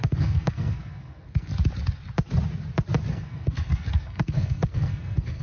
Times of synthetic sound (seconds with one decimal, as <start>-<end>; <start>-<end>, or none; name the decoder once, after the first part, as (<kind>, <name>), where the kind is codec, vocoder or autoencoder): 0.0-1.5 (codec, SNAC); 3.1-5.4